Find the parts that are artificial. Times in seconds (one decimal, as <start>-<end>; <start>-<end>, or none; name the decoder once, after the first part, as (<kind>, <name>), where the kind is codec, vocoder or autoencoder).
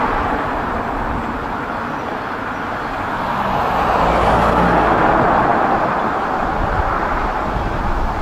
none